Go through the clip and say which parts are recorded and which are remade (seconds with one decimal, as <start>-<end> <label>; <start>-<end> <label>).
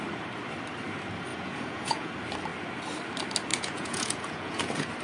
0.0-1.3 recorded; 1.3-2.1 remade; 2.1-3.5 recorded; 3.5-4.6 remade; 4.6-5.0 recorded